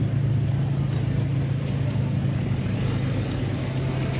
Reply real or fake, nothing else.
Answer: real